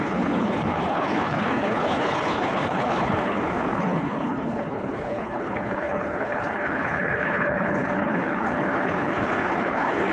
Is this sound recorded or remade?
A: remade